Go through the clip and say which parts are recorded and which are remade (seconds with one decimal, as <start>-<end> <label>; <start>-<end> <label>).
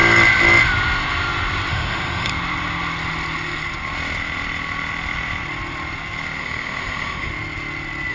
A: 0.0-1.7 recorded; 1.7-2.3 remade; 2.3-6.4 recorded; 6.4-7.3 remade; 7.3-8.1 recorded